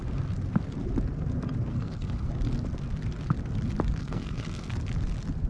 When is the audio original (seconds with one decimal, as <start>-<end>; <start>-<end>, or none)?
0.0-1.7; 2.3-4.0; 4.7-5.5